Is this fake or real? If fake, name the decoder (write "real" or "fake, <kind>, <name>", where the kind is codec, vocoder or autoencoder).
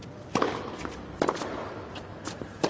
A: real